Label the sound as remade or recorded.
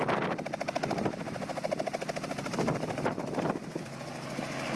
recorded